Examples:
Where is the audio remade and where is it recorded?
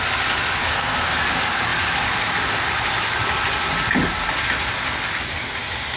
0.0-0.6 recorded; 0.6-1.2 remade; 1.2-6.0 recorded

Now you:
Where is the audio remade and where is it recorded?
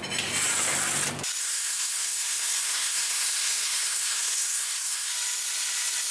0.0-1.4 recorded; 1.4-5.1 remade; 5.1-6.1 recorded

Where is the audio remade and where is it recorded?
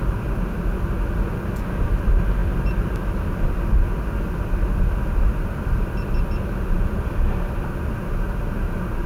0.0-9.1 recorded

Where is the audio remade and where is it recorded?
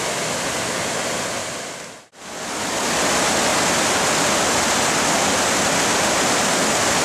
0.0-1.4 recorded; 1.4-1.9 remade; 1.9-7.0 recorded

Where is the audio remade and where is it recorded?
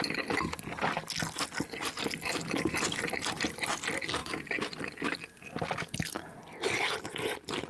0.0-7.7 recorded